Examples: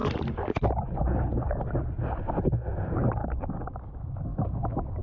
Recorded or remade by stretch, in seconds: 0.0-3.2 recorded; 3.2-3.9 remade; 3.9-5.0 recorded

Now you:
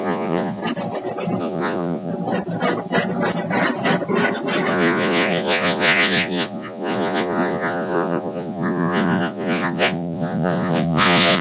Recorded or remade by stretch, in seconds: 0.0-0.6 remade; 0.6-1.4 recorded; 1.4-2.1 remade; 2.1-4.7 recorded; 4.7-11.4 remade

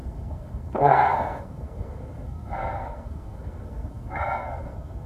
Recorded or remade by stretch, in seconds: 0.0-5.1 remade